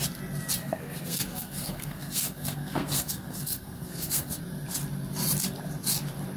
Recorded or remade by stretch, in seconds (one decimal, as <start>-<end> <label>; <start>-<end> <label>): 0.0-0.6 recorded; 0.6-4.4 remade; 4.4-6.4 recorded